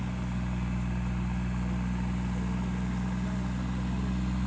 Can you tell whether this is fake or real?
real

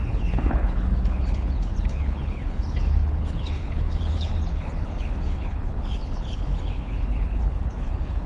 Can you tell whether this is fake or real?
fake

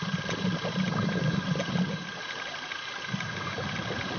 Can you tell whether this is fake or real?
real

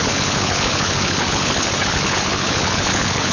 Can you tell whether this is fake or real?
fake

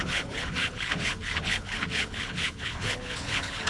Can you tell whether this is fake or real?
fake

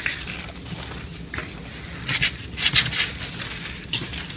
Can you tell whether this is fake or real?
real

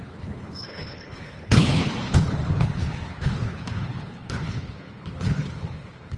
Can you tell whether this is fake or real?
fake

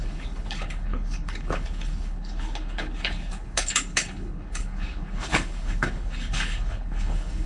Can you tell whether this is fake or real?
fake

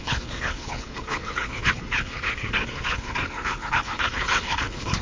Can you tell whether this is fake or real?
fake